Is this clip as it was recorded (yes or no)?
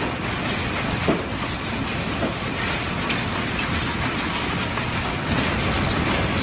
yes